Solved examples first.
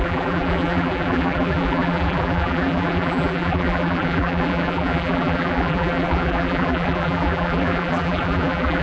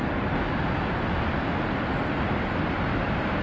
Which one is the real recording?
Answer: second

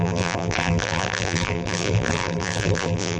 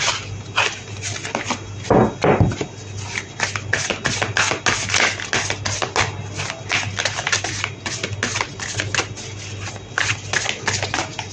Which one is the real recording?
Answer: second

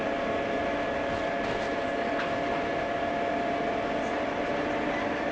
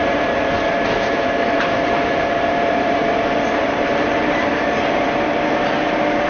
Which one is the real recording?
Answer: first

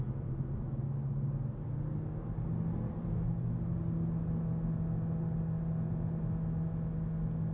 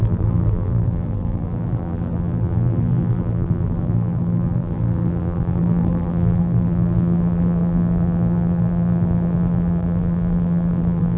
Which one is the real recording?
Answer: first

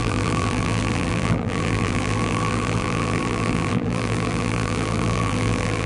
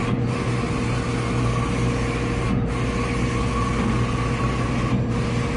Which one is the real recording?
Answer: second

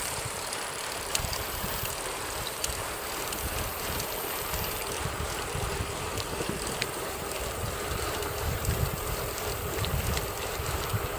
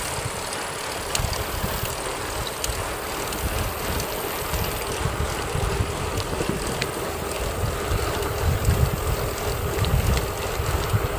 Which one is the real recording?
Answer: second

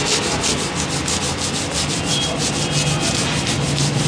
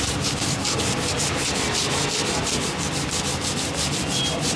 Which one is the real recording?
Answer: first